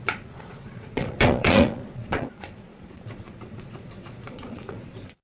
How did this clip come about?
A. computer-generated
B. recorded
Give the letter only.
A